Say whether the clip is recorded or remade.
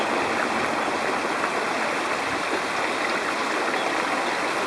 recorded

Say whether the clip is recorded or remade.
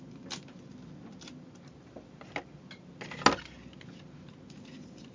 recorded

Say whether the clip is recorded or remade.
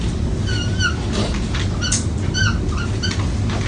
recorded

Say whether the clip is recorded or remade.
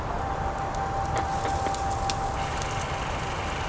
recorded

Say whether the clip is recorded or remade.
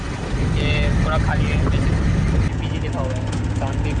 recorded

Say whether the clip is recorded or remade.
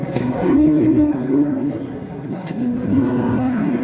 remade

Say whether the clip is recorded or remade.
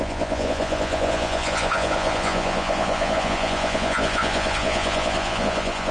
remade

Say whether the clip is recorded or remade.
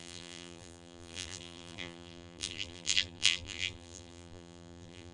remade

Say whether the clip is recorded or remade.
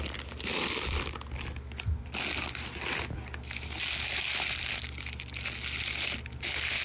recorded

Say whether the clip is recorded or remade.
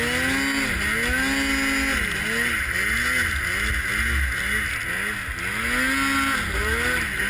recorded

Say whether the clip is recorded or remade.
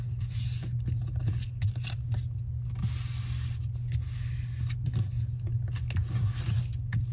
recorded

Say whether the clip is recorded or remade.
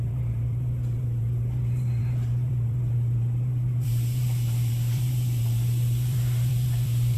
remade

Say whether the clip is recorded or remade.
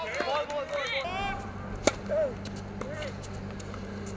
recorded